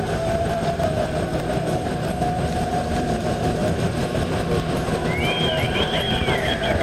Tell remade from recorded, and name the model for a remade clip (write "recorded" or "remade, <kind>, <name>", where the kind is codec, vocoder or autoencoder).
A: remade, vocoder, BigVGAN v2